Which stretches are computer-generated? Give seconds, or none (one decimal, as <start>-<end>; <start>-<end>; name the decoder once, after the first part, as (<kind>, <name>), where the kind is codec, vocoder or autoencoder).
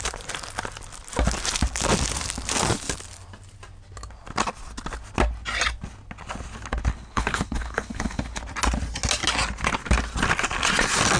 6.9-8.4 (codec, HILCodec)